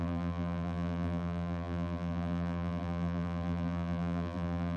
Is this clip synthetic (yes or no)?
yes